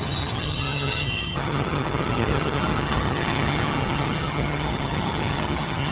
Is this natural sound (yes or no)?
no